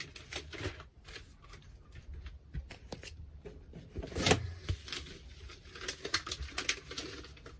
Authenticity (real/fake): real